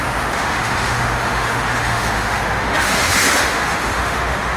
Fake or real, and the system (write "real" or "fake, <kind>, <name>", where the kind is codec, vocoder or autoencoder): fake, autoencoder, DAC-VAE